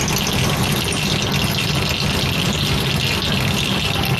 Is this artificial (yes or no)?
no